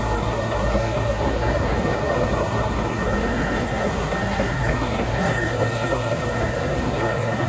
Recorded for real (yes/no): no